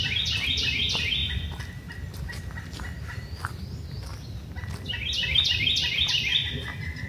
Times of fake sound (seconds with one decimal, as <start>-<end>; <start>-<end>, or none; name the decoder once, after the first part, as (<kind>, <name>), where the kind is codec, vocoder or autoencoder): none